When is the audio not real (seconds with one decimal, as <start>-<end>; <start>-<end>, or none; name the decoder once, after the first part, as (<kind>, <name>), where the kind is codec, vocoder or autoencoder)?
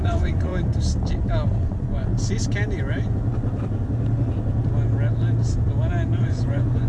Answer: 0.0-0.5 (vocoder, Vocos); 1.6-2.1; 6.2-6.9